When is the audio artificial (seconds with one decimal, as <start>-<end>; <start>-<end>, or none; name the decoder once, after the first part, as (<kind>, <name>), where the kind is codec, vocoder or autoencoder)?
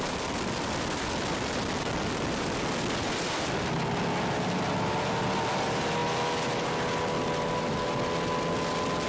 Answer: none